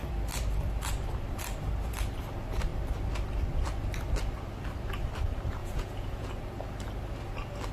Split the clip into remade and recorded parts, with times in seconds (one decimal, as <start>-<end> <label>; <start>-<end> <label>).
0.0-5.6 recorded; 5.6-6.3 remade; 6.3-7.7 recorded